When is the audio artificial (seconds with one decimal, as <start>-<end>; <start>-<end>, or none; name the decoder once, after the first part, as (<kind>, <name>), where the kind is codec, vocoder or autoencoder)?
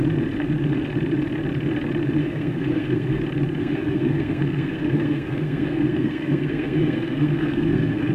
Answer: 2.2-3.2 (codec, SNAC); 3.6-8.1